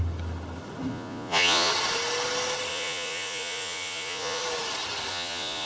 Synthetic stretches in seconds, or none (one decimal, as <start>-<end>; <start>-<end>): 0.9-1.7; 2.7-4.4; 5.1-5.7